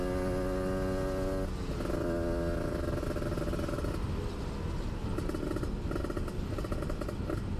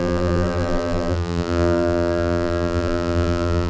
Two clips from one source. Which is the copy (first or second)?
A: second